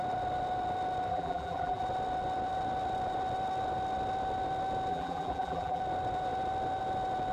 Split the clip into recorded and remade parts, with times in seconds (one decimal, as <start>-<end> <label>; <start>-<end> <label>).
0.0-1.1 recorded; 1.1-1.8 remade; 1.8-4.9 recorded; 4.9-5.8 remade; 5.8-7.3 recorded